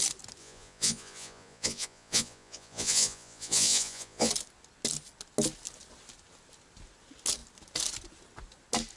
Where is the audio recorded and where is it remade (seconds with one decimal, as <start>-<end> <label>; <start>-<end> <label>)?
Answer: 0.0-0.4 recorded; 0.4-4.3 remade; 4.3-9.0 recorded